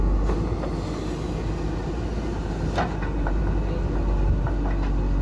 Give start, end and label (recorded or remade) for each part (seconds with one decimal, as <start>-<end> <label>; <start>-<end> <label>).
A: 0.0-1.8 recorded; 1.8-3.4 remade; 3.4-5.2 recorded